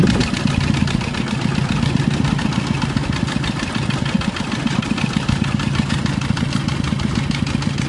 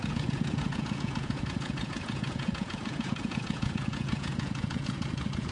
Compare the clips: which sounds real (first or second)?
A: first